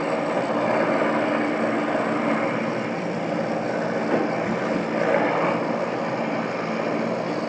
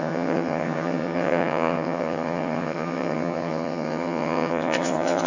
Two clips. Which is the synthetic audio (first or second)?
second